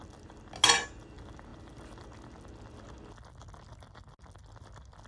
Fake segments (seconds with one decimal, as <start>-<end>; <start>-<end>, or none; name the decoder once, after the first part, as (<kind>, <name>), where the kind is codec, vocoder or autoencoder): none

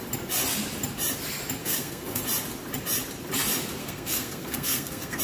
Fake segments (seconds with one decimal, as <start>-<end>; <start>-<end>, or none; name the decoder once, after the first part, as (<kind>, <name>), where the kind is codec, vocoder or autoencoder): 1.6-2.2 (codec, SNAC); 3.8-5.2

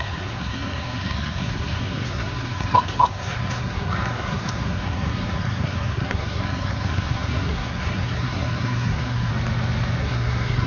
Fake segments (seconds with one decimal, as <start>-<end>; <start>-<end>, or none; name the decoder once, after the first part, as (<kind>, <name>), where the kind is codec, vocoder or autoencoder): 0.0-9.3 (codec, SNAC); 10.0-10.7

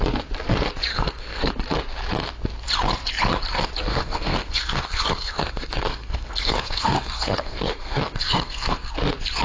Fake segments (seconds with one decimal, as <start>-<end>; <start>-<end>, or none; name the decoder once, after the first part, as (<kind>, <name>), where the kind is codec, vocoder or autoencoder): 0.9-1.5 (codec, SNAC); 3.9-8.9